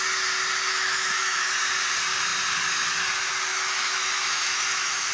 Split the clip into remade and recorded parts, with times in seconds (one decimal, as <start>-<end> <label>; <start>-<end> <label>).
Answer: 0.0-0.7 recorded; 0.7-1.5 remade; 1.5-3.5 recorded; 3.5-5.1 remade